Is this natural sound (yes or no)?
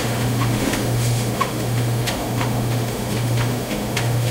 no